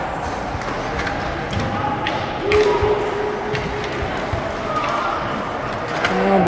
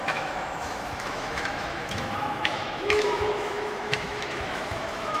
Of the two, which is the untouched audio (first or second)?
first